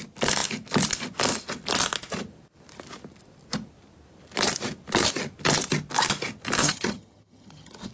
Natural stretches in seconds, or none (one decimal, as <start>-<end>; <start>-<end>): 0.0-6.6